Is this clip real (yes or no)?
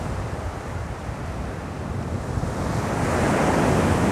yes